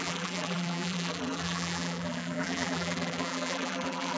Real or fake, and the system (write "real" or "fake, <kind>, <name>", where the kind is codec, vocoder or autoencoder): fake, vocoder, BigVGAN v2